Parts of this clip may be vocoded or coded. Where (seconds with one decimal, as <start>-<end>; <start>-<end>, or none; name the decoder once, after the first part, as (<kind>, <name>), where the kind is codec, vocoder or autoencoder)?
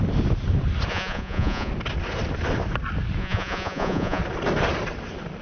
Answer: 0.9-1.7 (vocoder, Vocos); 3.2-4.2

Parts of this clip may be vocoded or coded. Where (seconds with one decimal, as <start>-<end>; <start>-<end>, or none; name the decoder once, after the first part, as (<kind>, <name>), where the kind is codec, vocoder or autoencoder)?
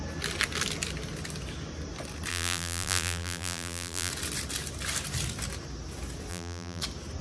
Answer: 2.3-4.1 (vocoder, BigVGAN v2); 6.3-6.8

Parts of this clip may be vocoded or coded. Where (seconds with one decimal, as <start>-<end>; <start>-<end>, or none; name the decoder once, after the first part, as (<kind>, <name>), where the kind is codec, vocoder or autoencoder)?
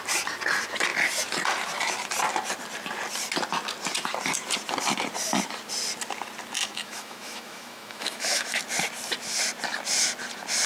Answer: 6.6-8.6 (autoencoder, DAC-VAE)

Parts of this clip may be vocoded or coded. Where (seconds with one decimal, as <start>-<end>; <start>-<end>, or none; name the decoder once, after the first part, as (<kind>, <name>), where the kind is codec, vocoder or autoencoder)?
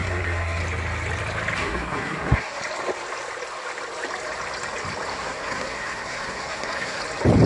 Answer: 0.0-0.6 (codec, SNAC); 1.6-2.6; 5.1-7.0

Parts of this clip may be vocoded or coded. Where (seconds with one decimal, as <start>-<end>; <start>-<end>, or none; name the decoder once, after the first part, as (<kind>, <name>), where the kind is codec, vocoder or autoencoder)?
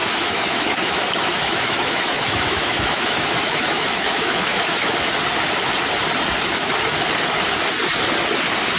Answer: 0.0-5.0 (autoencoder, DAC-VAE)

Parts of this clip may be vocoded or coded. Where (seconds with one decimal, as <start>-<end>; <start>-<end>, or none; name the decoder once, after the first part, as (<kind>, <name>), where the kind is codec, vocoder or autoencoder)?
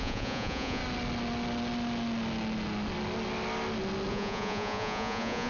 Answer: 0.0-0.8 (vocoder, Vocos); 4.1-5.5